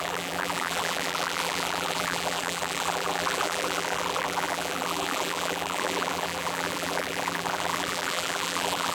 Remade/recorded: remade